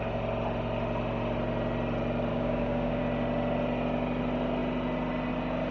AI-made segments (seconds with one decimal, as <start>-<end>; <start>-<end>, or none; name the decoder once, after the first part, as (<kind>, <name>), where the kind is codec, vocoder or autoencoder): 2.3-3.0 (codec, DAC)